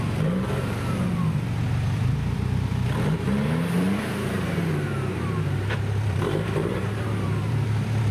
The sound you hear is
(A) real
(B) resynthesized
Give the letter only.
B